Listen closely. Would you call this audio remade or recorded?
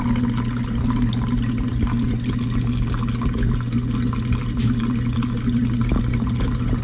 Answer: recorded